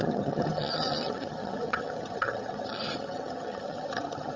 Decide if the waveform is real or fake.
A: fake